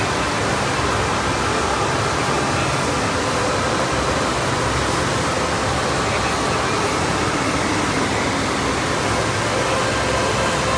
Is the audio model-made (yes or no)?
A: no